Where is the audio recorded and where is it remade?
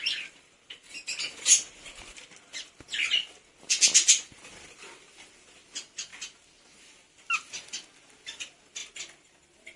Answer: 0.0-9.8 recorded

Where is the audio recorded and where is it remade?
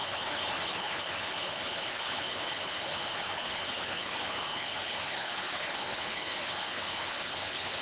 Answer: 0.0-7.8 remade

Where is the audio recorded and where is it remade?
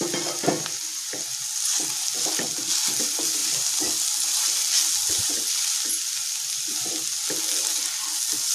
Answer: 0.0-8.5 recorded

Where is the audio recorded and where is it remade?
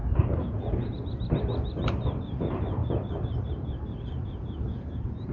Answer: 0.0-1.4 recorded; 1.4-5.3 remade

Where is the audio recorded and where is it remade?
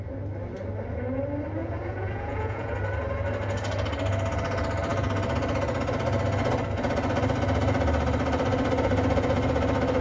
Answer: 0.0-1.6 recorded; 1.6-2.7 remade; 2.7-10.0 recorded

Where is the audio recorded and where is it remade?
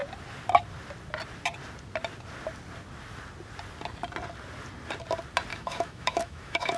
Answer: 0.0-5.5 recorded; 5.5-6.8 remade